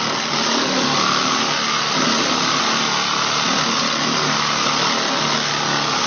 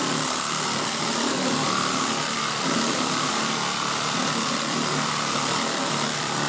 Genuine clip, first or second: first